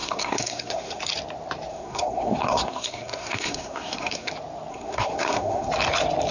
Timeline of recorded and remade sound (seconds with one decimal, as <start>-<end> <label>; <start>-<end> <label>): 0.0-1.0 remade; 1.0-1.7 recorded; 1.7-4.3 remade; 4.3-4.7 recorded; 4.7-5.7 remade; 5.7-6.3 recorded